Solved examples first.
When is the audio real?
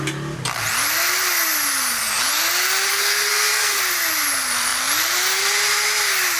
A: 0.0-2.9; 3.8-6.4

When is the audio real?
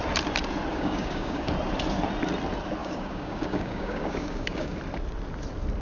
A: 0.0-0.7; 1.5-2.8; 4.8-5.8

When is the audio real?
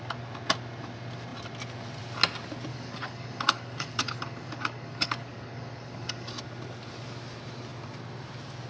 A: 0.0-2.7; 6.3-8.7